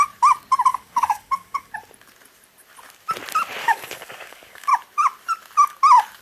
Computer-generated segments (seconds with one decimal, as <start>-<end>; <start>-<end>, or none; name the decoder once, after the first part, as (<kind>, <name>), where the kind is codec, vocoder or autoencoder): 0.7-1.7 (codec, DAC); 3.6-4.7

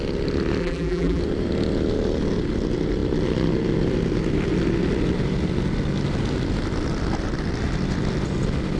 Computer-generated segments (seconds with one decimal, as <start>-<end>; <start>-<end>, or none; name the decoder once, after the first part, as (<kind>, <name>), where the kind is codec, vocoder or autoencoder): 0.6-1.2 (vocoder, BigVGAN v2)

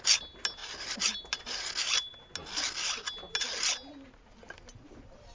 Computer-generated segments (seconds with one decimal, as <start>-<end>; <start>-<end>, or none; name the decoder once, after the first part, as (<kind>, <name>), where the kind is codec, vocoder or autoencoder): none